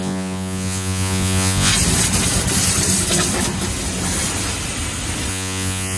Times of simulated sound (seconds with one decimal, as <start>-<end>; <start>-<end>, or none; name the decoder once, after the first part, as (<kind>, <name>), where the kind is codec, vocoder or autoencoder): 0.0-1.7 (vocoder, Vocos); 5.3-6.0